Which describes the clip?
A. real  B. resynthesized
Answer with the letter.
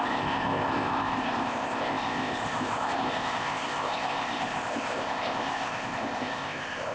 B